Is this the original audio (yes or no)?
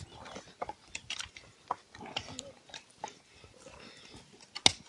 yes